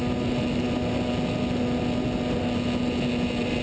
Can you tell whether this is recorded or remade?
recorded